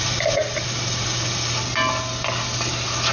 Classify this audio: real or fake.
real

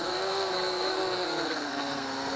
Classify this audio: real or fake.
fake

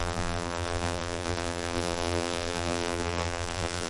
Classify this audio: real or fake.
fake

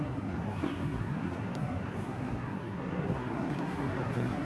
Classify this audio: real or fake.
fake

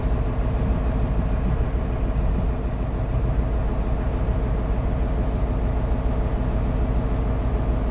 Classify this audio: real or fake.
real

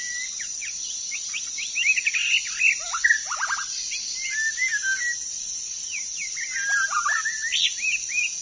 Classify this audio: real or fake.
real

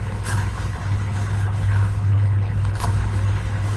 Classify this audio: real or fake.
fake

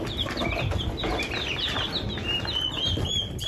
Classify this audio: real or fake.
real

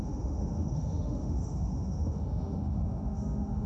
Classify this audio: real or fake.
fake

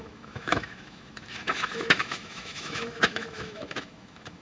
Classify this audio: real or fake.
fake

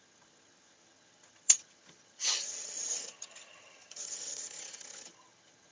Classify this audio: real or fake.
fake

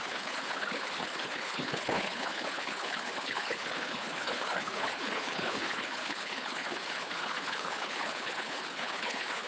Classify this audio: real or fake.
fake